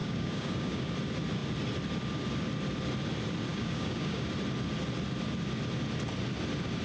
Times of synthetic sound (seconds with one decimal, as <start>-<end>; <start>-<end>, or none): 0.0-0.9; 3.5-4.3